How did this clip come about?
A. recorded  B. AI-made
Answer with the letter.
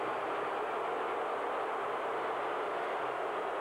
A